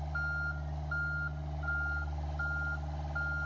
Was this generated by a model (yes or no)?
no